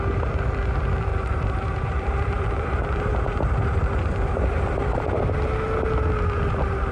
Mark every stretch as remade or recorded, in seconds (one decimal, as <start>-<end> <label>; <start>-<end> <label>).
0.0-1.1 recorded; 1.1-5.2 remade; 5.2-6.9 recorded